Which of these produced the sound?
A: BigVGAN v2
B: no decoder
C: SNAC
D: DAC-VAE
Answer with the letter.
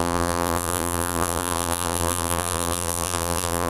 A